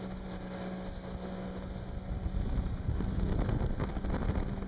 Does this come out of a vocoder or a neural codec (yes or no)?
no